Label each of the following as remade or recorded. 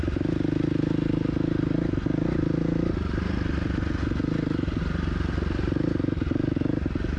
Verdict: recorded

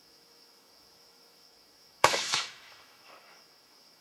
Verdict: remade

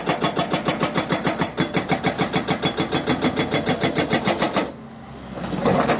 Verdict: recorded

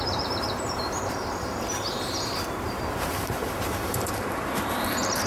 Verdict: remade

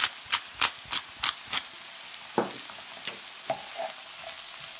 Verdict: recorded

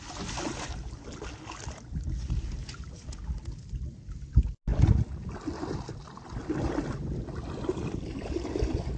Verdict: recorded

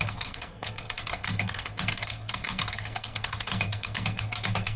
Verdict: remade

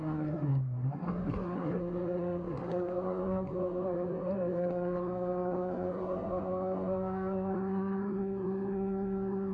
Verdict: remade